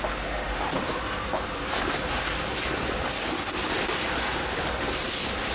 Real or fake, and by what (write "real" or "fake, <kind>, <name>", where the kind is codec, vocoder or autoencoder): real